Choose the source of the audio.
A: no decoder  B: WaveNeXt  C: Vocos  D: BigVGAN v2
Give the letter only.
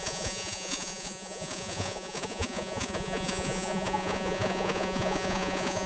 C